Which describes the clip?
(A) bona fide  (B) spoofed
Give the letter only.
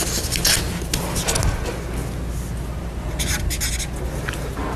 A